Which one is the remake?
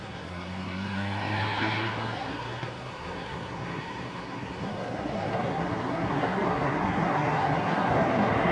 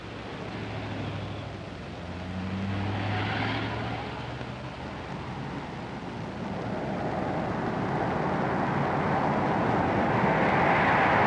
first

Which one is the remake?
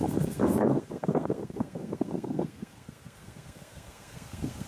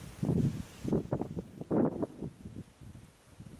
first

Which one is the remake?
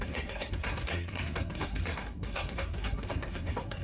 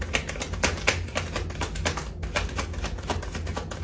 first